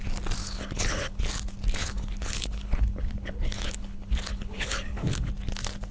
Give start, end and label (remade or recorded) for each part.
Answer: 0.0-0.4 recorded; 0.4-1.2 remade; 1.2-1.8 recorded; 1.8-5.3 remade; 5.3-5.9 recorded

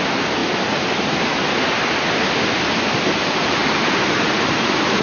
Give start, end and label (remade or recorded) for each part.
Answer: 0.0-5.0 recorded

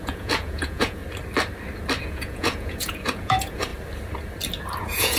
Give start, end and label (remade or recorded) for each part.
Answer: 0.0-1.0 remade; 1.0-2.0 recorded; 2.0-3.7 remade; 3.7-4.8 recorded; 4.8-5.2 remade

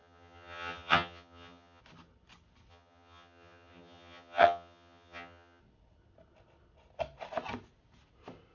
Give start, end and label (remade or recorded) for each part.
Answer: 0.0-1.8 remade; 1.8-2.7 recorded; 2.7-5.6 remade; 5.6-8.5 recorded

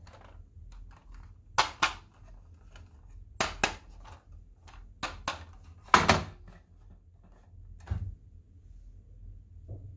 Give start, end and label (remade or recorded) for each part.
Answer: 0.0-10.0 recorded

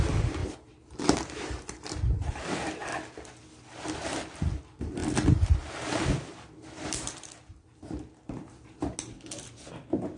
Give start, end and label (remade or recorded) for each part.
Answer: 0.0-0.4 recorded; 0.4-2.4 remade; 2.4-10.2 recorded

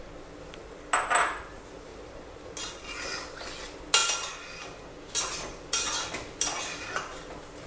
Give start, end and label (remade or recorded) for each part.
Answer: 0.0-7.7 recorded

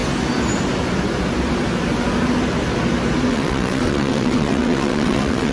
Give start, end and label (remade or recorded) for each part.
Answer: 0.0-3.3 recorded; 3.3-5.5 remade